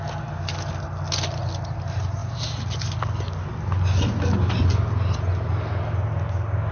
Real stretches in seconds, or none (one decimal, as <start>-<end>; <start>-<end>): 0.0-6.7